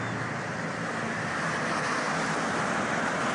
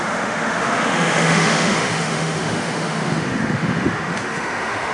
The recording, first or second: first